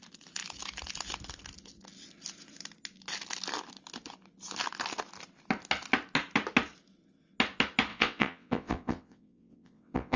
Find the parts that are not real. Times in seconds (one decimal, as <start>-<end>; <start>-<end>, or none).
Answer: 7.9-10.2